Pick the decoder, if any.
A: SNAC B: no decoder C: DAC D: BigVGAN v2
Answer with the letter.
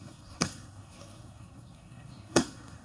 A